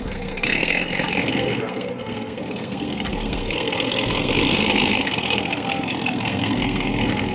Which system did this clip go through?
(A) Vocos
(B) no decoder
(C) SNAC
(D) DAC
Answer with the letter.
C